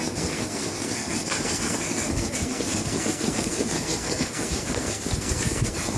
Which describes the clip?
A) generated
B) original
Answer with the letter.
A